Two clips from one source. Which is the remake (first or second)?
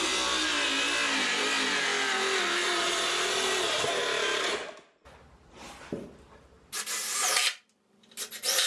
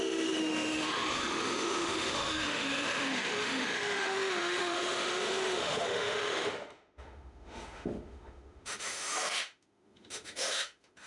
second